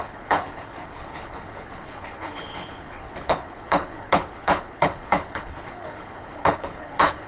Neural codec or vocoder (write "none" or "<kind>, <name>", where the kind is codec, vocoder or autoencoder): codec, HILCodec